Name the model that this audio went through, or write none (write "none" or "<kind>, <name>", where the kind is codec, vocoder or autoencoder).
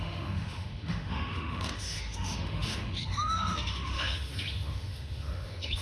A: autoencoder, DAC-VAE